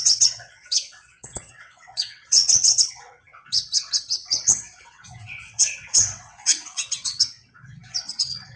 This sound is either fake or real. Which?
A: fake